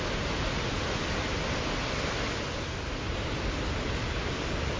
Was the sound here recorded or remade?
recorded